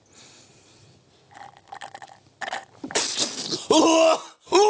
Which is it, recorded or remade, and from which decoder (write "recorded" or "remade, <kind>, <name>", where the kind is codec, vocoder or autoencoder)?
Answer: recorded